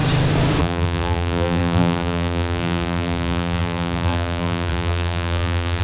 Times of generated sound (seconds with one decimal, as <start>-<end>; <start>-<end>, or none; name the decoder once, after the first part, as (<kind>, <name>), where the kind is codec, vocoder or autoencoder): 0.6-5.8 (vocoder, BigVGAN v2)